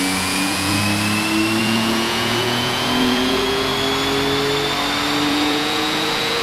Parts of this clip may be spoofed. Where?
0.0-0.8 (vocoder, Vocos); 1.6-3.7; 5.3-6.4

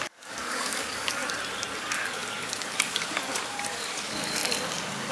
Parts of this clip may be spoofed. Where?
0.0-1.2 (codec, DAC); 1.8-5.1

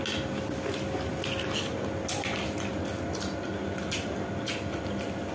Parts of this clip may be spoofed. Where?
none

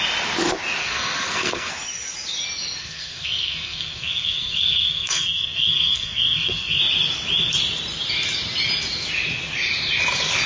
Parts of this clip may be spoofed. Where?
0.8-1.7 (codec, SNAC); 2.8-6.8

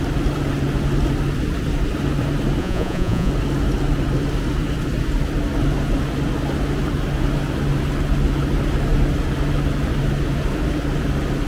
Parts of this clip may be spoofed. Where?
2.6-3.3 (vocoder, Vocos)